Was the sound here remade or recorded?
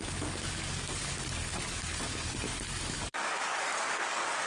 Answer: remade